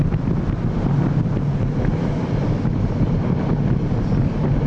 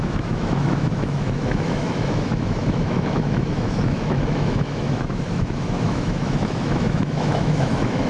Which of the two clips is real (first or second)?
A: first